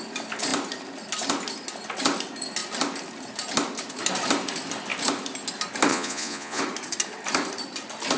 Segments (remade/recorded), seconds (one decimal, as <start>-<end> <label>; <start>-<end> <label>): 0.0-5.9 recorded; 5.9-6.6 remade; 6.6-8.2 recorded